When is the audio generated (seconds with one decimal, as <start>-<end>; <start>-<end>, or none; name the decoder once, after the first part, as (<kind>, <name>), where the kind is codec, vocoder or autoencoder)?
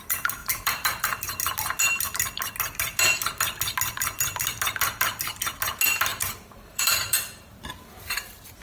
0.4-1.4 (vocoder, BigVGAN v2); 6.1-8.6